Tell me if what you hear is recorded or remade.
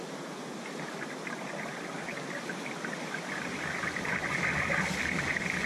recorded